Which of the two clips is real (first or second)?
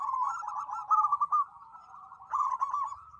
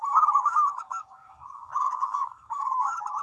first